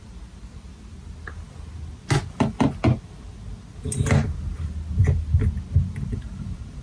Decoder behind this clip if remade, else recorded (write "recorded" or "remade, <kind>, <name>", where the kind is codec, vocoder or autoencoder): recorded